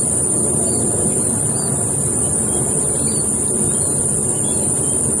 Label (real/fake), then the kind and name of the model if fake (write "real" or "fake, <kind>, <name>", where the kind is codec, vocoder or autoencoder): real